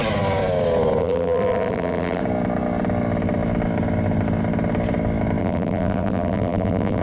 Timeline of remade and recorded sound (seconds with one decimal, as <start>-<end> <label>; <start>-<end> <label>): 0.0-1.0 recorded; 1.0-2.2 remade; 2.2-5.4 recorded; 5.4-7.0 remade